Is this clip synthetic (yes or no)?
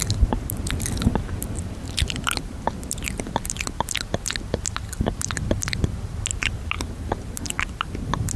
no